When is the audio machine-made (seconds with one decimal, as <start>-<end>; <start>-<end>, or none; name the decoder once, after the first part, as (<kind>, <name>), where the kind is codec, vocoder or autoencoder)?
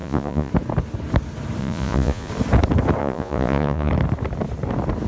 0.0-0.5 (vocoder, Vocos); 1.6-2.3; 3.0-3.9